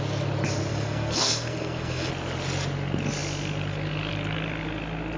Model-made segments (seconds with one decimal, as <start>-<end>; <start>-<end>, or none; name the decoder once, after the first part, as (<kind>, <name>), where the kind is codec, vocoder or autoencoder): 0.7-2.1 (codec, SNAC)